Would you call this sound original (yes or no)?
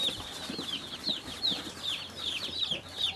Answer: no